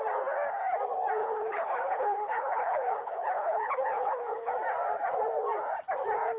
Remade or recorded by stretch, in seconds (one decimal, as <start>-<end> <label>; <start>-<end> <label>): 0.0-1.2 recorded; 1.2-4.5 remade; 4.5-6.4 recorded